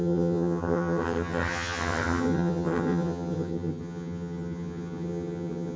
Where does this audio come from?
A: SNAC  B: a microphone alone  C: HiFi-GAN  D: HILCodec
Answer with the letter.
C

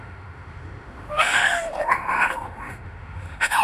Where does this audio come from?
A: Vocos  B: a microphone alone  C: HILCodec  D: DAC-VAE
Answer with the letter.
D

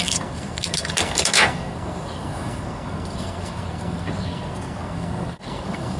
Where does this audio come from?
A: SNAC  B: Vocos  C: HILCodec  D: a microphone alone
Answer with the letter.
A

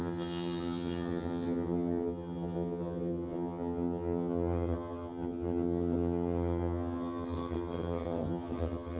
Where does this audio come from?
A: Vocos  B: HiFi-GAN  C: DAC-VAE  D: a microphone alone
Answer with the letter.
B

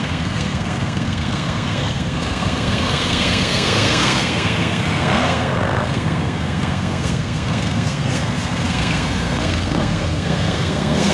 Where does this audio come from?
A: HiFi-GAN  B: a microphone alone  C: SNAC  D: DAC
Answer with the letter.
C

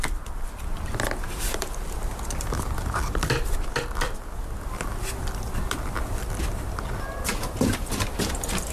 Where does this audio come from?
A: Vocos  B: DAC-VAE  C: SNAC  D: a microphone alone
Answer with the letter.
D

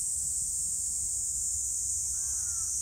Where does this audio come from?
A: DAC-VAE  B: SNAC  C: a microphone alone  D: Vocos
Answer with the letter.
C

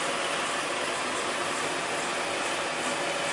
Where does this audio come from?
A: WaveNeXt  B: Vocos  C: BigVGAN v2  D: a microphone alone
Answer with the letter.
D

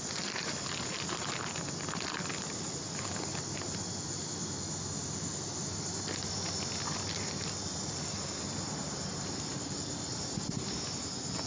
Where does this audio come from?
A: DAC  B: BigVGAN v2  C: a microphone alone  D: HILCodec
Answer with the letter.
C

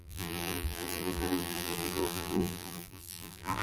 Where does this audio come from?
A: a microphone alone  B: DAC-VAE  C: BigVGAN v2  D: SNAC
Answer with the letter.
C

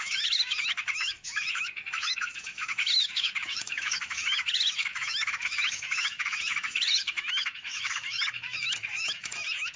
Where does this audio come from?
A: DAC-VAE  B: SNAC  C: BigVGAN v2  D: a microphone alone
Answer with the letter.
A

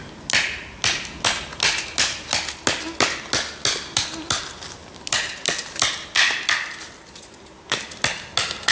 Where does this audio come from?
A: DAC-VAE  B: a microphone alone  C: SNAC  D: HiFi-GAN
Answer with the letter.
B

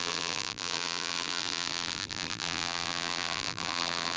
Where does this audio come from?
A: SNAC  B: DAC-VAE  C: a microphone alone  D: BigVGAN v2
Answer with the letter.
D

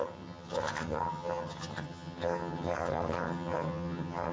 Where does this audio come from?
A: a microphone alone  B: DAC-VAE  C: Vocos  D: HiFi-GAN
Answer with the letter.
D